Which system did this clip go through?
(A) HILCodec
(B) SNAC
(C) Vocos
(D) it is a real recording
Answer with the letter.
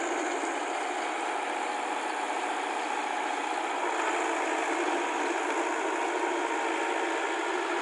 D